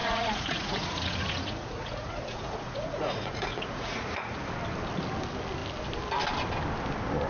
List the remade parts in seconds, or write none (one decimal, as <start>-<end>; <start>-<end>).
0.0-4.4